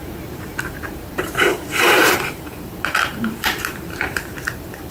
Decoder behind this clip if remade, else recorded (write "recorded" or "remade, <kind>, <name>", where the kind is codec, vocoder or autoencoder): remade, vocoder, BigVGAN v2